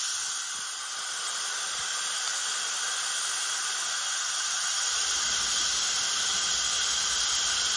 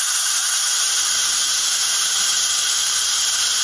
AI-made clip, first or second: second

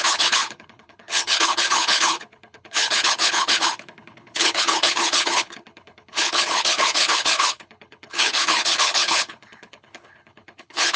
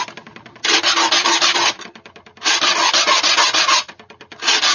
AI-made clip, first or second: first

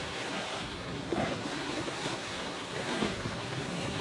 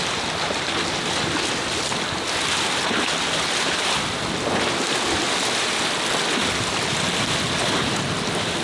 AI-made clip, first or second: first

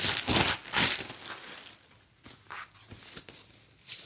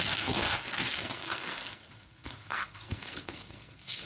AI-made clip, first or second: second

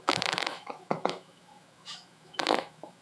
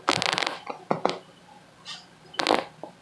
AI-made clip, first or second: first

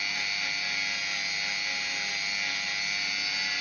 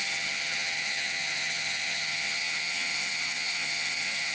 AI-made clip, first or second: second